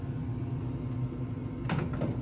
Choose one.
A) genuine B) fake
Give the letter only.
A